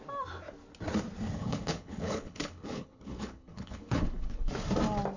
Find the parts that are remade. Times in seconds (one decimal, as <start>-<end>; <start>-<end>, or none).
1.4-4.5